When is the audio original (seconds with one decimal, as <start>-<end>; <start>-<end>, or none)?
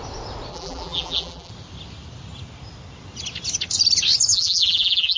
0.0-0.5; 1.5-4.3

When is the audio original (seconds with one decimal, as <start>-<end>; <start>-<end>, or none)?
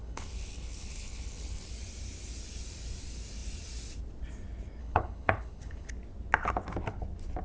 1.7-4.8; 5.9-7.4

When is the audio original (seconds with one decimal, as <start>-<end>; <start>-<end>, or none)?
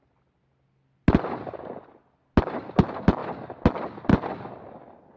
0.0-5.2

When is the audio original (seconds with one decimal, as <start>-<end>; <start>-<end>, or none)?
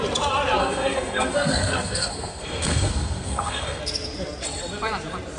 0.0-0.6; 3.8-5.4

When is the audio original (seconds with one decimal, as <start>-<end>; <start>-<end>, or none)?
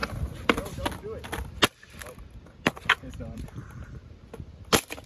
0.0-3.1; 3.6-5.1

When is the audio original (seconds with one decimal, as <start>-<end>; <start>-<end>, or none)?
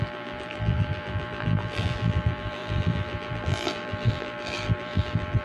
none